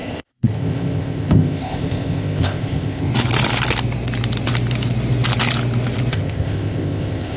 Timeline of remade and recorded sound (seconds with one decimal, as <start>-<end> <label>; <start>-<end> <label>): 0.0-3.1 remade; 3.1-6.1 recorded; 6.1-7.4 remade